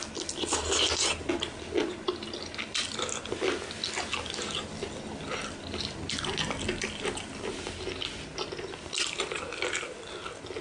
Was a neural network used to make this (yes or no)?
no